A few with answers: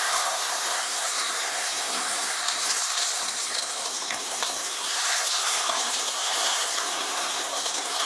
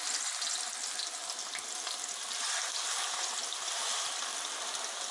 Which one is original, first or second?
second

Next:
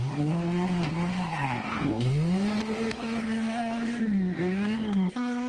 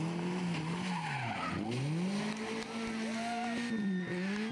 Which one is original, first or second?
second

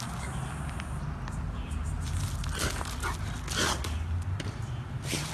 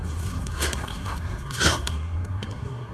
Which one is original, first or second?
first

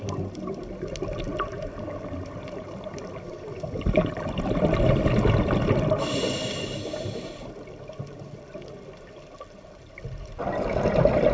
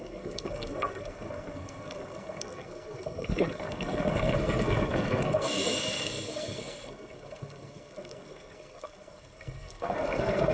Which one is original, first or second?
first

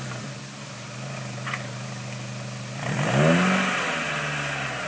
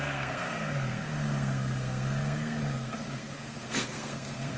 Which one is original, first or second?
first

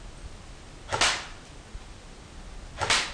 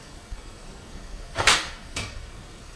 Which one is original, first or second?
first